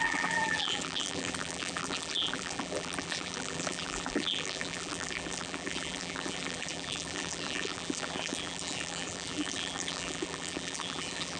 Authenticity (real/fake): fake